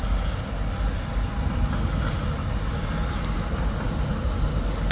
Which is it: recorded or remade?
recorded